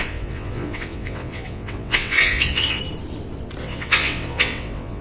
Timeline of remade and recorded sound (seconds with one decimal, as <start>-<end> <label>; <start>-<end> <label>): 0.0-2.8 remade; 2.8-3.6 recorded; 3.6-5.0 remade